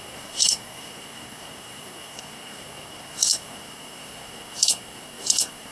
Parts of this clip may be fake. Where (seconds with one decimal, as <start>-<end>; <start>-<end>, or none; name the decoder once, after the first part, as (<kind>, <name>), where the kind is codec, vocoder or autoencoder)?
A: 0.0-5.7 (codec, SNAC)